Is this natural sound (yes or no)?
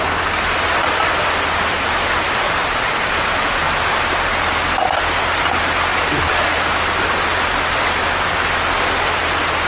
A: yes